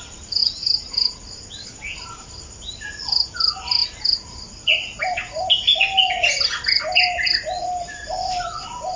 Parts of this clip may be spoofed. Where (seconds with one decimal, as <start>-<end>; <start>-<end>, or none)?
0.0-3.8; 7.8-9.0